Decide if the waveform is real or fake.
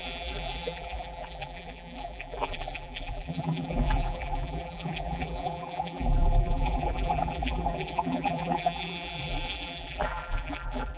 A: fake